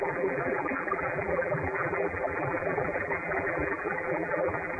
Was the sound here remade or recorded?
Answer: remade